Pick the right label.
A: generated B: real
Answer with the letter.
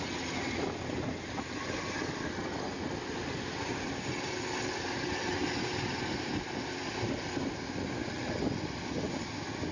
B